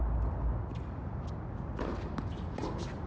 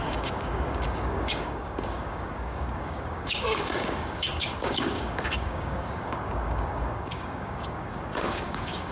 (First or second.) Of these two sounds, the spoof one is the second